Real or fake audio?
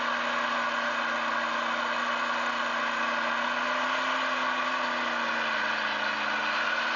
real